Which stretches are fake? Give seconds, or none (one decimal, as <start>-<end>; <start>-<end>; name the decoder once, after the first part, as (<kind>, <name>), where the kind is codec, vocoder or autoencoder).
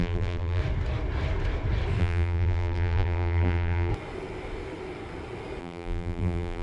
0.0-0.6 (vocoder, BigVGAN v2); 2.0-3.9; 5.6-6.6